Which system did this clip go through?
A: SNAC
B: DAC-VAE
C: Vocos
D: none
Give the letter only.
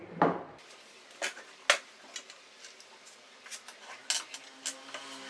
D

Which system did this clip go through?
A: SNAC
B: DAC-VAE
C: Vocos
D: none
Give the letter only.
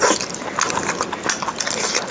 D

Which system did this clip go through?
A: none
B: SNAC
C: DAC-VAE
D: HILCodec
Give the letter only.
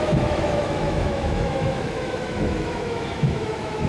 C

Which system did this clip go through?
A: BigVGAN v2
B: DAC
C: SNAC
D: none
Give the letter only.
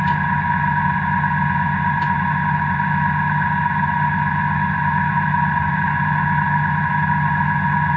D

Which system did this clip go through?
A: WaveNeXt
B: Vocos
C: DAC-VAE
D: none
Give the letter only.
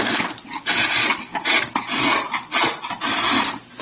D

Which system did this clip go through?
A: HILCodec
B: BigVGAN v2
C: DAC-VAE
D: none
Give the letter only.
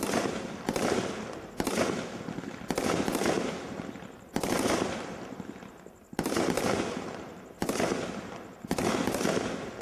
D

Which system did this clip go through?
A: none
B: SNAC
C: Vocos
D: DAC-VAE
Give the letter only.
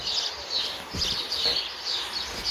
A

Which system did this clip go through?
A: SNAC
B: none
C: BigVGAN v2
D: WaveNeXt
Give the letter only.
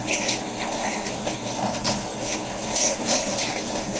A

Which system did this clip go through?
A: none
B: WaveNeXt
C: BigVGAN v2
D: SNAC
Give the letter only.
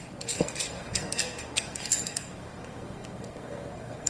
D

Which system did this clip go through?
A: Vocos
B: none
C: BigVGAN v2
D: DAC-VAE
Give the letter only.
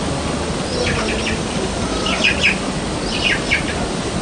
B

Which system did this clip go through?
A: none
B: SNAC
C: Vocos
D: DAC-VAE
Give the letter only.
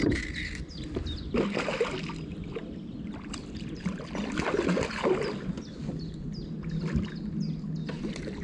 A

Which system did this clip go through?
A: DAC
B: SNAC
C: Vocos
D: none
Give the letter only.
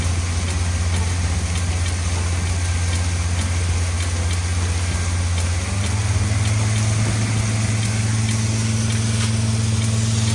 D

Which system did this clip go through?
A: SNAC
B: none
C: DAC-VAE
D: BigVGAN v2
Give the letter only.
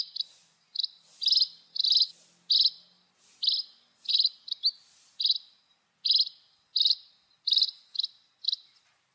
B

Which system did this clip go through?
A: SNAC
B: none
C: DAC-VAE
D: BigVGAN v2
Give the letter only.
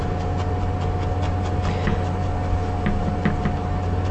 B